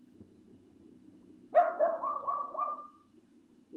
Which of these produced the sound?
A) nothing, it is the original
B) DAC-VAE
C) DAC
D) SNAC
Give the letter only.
B